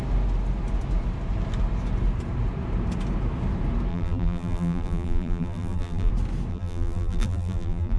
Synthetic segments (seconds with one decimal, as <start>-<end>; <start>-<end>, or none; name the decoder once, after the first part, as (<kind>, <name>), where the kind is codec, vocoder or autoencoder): 3.9-6.1 (vocoder, BigVGAN v2); 6.5-8.0